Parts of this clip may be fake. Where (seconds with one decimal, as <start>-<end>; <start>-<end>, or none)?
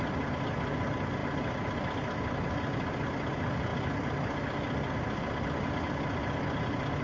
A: none